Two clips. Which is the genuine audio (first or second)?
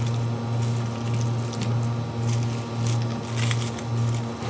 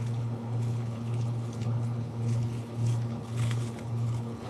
first